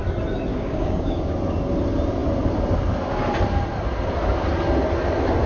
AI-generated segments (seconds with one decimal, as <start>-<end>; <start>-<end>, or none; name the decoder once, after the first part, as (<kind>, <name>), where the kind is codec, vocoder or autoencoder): 0.5-1.3 (codec, DAC)